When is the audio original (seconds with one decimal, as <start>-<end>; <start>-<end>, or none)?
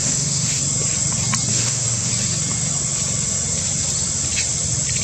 0.6-1.5; 2.1-5.0